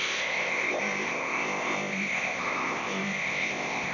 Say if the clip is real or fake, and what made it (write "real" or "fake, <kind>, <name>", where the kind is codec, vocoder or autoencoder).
fake, codec, ZipCodec